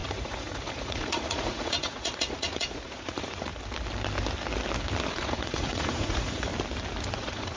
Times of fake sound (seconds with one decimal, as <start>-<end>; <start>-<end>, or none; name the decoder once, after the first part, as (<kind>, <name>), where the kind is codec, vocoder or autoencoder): 0.0-3.5 (vocoder, Vocos); 5.1-6.5; 7.1-7.6